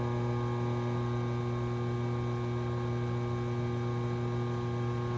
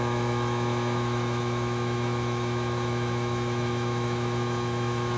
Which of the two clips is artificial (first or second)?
second